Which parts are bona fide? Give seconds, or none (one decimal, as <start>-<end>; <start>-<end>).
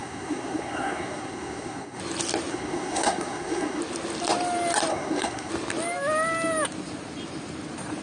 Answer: 2.0-2.5; 3.8-4.9; 5.5-8.0